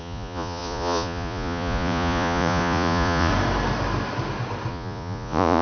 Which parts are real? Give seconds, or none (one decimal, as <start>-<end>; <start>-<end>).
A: 3.3-4.7